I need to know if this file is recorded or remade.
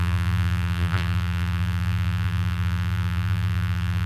remade